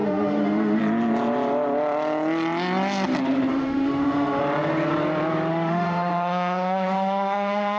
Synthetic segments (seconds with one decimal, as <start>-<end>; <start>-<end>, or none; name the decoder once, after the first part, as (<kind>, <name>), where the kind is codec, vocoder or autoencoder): 0.0-0.8 (autoencoder, DAC-VAE); 3.5-4.4; 5.5-7.8